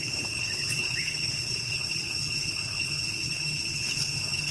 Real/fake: fake